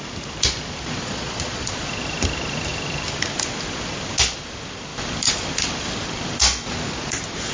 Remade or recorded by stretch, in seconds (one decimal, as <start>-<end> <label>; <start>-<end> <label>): 0.0-1.0 recorded; 1.0-1.7 remade; 1.7-7.5 recorded